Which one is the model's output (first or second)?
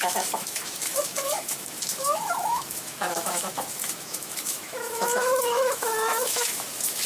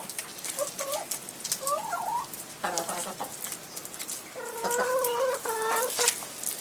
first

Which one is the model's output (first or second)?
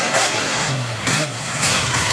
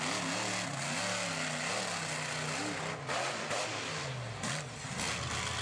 first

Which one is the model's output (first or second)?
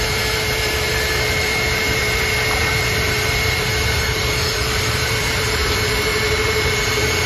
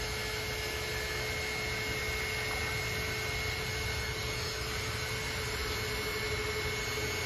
first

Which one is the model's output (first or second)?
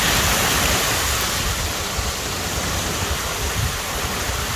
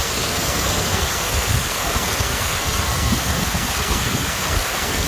second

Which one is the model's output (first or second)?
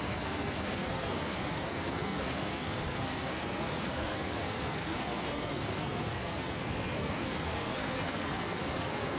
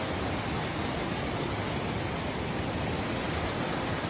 first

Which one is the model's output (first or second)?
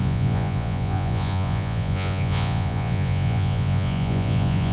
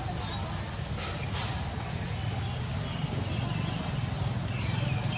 first